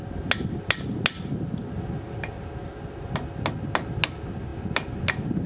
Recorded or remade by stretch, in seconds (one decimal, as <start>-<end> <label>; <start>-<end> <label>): 0.0-5.5 recorded